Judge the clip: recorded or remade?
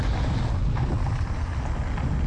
recorded